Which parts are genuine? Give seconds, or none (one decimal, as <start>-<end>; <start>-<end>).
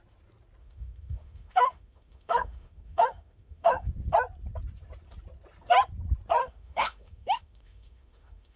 0.0-0.6; 3.9-6.4